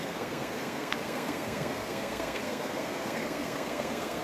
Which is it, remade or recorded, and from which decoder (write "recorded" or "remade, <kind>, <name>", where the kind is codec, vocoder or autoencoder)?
remade, codec, SNAC